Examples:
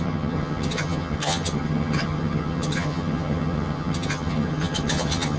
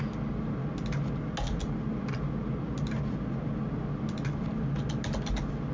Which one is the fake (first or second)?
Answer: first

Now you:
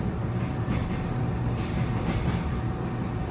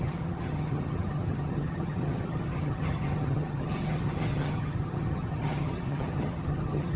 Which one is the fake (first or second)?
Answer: second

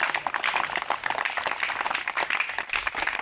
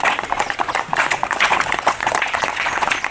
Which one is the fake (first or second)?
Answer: second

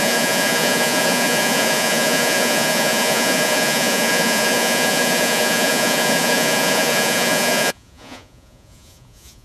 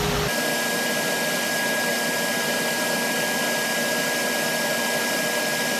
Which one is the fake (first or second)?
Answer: first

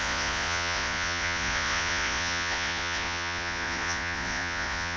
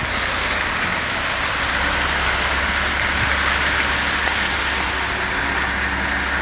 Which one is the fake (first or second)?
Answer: first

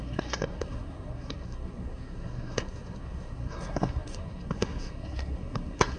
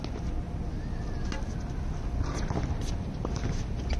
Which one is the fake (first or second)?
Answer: first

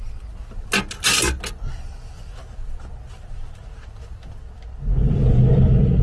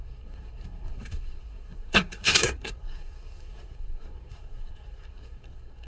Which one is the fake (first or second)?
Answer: second